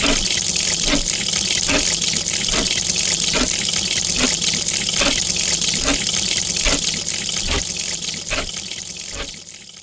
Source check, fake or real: real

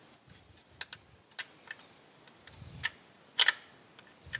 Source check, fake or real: real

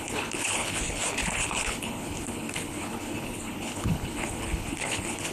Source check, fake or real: fake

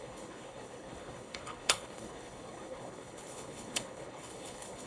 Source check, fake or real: fake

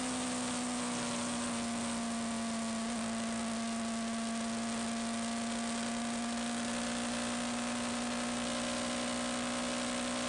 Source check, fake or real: real